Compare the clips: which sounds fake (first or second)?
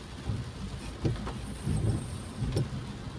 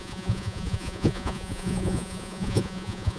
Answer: second